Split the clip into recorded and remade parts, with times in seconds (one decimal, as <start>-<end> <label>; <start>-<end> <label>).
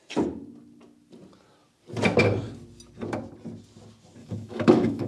0.0-4.2 recorded; 4.2-5.1 remade